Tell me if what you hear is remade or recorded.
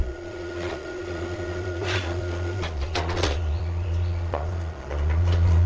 remade